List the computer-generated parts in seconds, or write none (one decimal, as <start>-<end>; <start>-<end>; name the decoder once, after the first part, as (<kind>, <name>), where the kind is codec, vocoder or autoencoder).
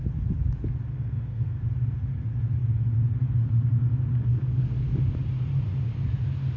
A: 0.9-1.6 (codec, SNAC); 4.2-5.0